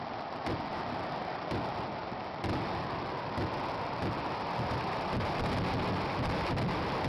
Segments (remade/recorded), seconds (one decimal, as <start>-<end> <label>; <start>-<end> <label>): 0.0-7.1 recorded